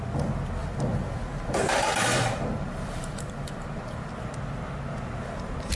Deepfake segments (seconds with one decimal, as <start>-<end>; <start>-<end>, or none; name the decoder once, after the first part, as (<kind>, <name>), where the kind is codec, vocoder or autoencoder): 0.6-4.1 (vocoder, BigVGAN v2)